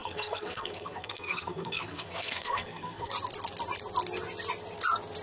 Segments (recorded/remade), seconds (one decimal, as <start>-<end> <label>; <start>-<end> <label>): 0.0-3.1 remade; 3.1-5.2 recorded